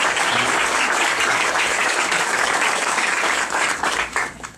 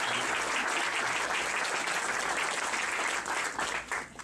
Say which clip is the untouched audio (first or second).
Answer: second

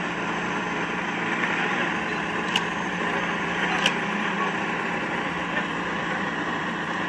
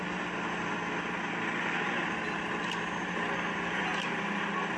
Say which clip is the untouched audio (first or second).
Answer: second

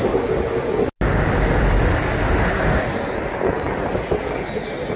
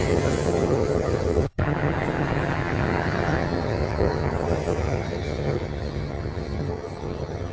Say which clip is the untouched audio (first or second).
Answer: first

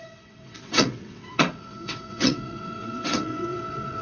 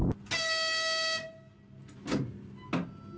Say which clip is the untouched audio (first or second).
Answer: second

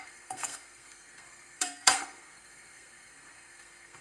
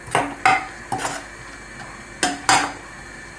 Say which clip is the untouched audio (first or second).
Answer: second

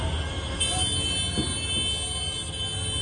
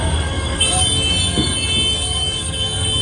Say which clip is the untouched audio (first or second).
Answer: first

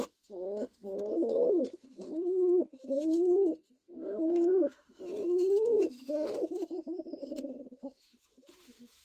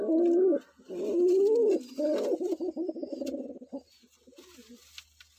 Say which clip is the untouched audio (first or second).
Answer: second